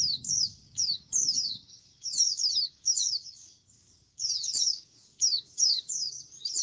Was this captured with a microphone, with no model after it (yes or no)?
no